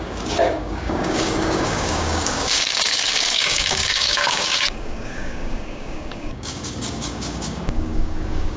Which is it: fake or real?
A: fake